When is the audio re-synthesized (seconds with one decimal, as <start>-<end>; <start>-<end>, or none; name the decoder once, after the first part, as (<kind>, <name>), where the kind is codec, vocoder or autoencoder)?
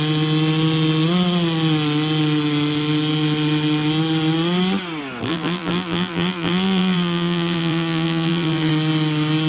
5.2-8.7 (vocoder, BigVGAN v2)